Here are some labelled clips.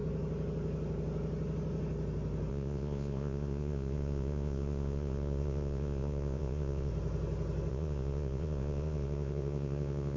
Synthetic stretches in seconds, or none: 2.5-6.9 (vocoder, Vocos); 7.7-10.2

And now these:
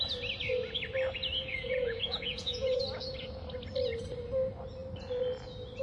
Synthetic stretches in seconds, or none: 1.5-2.8 (vocoder, Vocos)

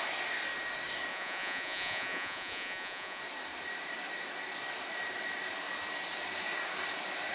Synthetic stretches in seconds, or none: 1.1-3.2 (vocoder, Vocos)

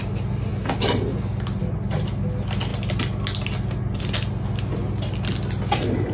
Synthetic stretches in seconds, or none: none

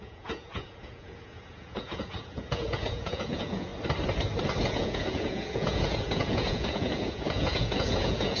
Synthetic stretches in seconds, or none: 0.0-3.7 (vocoder, Vocos); 4.6-8.4

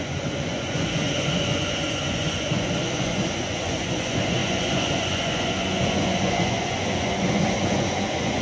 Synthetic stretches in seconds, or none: 0.0-8.4 (vocoder, Vocos)

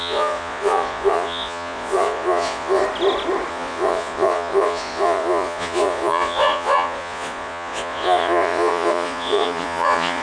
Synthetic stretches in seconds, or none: 0.0-2.8 (vocoder, Vocos); 3.5-10.2

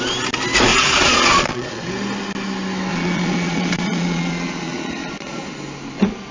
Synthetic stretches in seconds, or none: 0.7-1.9 (vocoder, Vocos); 2.9-5.5